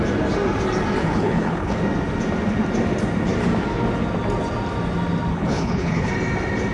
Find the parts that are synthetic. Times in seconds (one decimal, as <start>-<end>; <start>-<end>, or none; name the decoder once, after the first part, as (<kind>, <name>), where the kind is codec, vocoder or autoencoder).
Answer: 1.0-1.8 (codec, HILCodec); 5.3-6.1